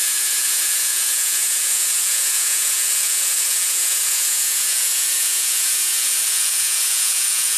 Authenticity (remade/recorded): remade